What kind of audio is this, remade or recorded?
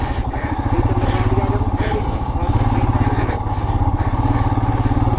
recorded